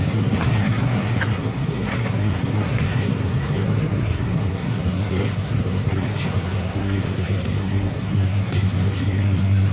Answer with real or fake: fake